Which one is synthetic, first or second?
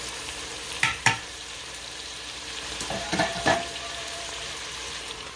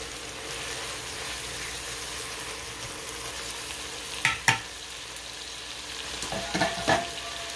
first